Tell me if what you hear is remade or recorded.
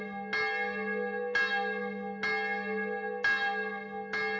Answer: recorded